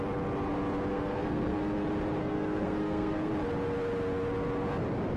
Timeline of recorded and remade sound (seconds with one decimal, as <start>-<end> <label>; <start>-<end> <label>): 0.0-0.9 recorded; 0.9-1.6 remade; 1.6-2.2 recorded; 2.2-3.3 remade; 3.3-5.2 recorded